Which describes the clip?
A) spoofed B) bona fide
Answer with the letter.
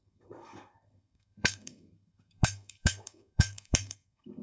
A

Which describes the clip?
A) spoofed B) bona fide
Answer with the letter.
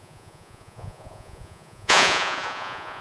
A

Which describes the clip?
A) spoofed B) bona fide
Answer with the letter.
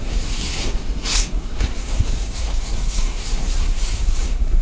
A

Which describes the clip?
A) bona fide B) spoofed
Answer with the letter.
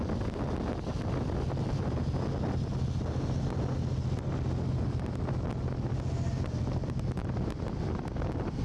A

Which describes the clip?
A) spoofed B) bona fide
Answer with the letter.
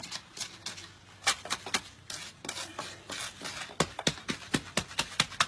B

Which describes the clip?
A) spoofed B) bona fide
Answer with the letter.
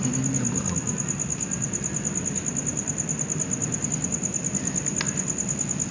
B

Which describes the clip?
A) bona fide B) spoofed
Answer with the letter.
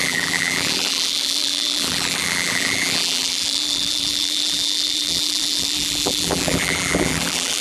B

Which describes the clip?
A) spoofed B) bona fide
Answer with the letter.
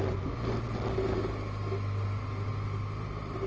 B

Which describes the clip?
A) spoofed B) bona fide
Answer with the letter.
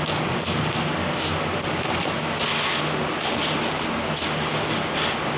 B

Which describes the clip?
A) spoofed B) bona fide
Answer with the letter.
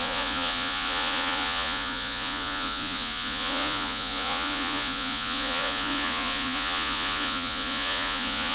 A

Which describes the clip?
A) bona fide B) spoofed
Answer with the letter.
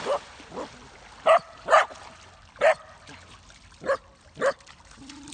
A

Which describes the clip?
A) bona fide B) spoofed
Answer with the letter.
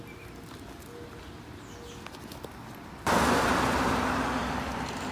A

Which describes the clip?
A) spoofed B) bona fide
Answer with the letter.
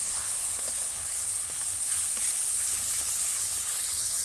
A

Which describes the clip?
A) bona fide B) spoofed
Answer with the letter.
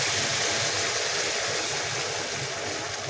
A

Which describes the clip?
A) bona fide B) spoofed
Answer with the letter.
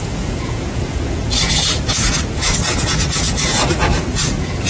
B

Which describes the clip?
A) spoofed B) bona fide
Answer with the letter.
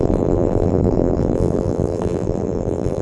A